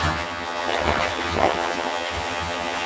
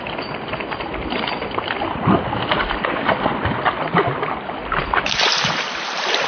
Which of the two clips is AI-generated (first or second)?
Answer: first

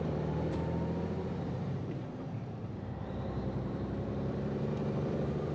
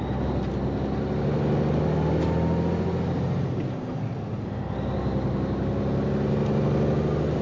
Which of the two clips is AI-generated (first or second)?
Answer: first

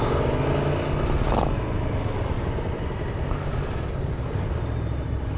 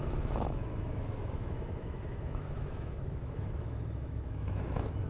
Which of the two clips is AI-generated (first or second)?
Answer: second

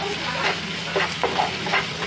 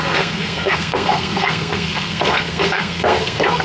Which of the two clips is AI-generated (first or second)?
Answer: second